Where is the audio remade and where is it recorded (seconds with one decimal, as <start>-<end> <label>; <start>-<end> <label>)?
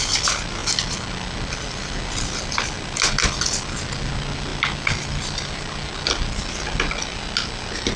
0.0-8.0 recorded